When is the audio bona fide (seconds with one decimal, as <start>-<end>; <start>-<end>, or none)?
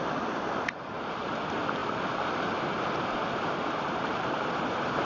1.4-1.8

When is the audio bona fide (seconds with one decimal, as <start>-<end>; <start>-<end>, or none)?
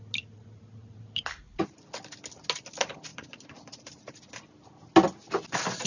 0.0-0.8; 1.8-3.1; 4.3-5.9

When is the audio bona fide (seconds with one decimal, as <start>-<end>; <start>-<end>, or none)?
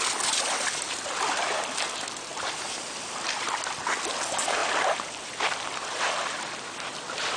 0.0-2.3; 3.8-4.6; 6.0-7.4